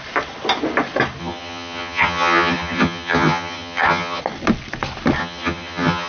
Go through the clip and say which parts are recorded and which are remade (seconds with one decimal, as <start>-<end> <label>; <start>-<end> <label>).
0.0-1.2 recorded; 1.2-4.2 remade; 4.2-5.2 recorded; 5.2-6.1 remade